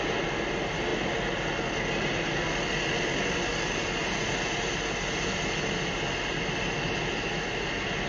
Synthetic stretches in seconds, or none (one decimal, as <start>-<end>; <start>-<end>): none